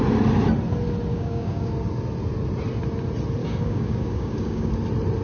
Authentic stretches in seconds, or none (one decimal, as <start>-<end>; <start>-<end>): 0.0-1.1; 1.7-3.4; 4.7-5.2